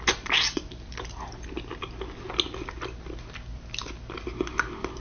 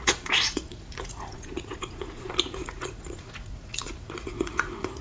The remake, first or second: second